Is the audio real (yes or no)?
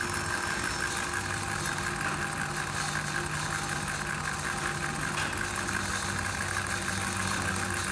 yes